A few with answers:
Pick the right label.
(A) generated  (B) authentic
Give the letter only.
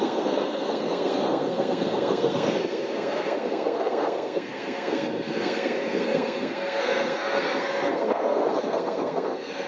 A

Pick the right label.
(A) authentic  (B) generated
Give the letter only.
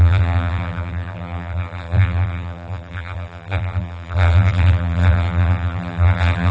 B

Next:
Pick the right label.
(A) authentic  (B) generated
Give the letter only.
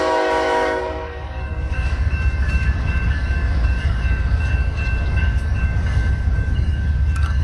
B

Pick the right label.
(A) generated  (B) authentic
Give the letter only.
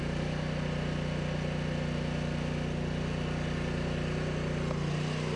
B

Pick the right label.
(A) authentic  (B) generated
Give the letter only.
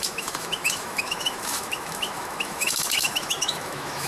B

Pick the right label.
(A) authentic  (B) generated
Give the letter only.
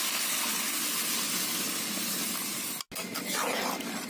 A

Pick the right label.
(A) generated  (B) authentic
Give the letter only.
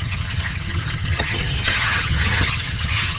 A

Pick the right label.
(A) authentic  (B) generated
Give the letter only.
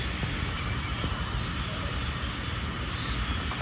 A